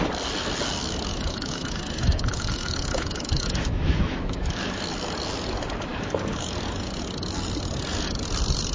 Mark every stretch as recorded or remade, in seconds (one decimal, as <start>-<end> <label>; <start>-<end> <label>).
0.0-1.1 recorded; 1.1-4.7 remade; 4.7-8.7 recorded